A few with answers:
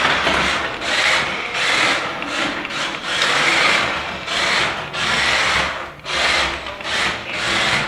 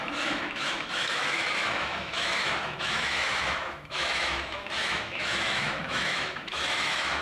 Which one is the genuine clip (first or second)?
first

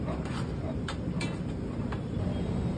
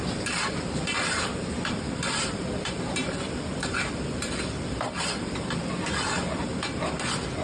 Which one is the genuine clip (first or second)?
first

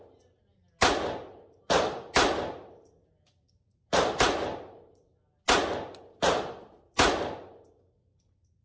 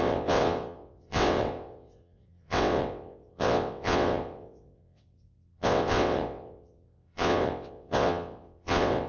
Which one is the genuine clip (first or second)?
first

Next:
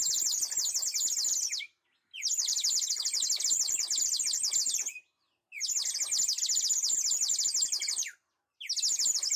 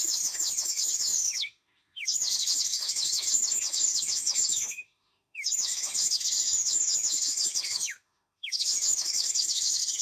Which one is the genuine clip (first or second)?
first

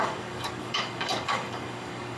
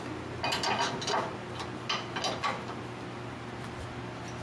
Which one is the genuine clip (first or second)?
second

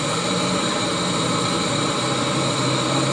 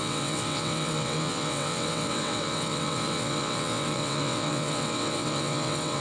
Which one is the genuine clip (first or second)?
first